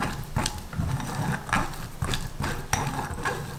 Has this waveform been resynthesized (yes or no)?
no